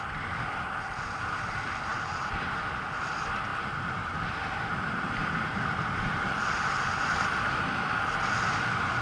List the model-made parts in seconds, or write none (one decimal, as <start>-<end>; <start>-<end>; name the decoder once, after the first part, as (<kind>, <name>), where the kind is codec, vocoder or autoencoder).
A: none